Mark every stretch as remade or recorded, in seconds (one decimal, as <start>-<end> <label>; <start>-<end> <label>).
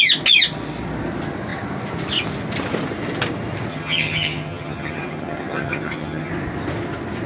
0.0-3.7 recorded; 3.7-6.3 remade; 6.3-7.3 recorded